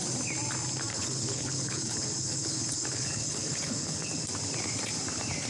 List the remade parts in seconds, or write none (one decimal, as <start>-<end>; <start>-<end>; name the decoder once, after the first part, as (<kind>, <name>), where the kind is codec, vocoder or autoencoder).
0.9-4.2 (codec, HILCodec)